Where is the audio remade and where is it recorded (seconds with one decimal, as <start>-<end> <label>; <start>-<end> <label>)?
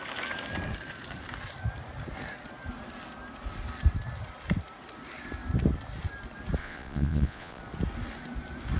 0.0-6.6 recorded; 6.6-7.6 remade; 7.6-8.8 recorded